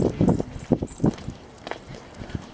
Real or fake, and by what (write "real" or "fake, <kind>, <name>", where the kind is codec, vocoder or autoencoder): real